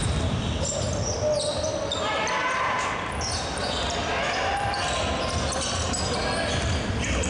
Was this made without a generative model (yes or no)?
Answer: yes